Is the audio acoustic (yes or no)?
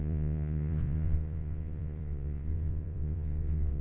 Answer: no